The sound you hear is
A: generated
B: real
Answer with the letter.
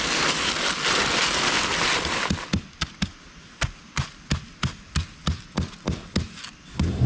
B